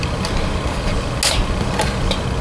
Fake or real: real